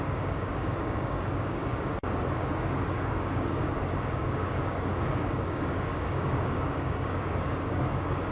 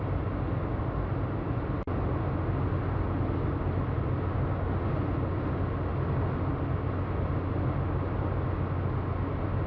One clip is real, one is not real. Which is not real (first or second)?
first